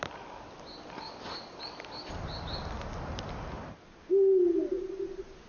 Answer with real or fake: real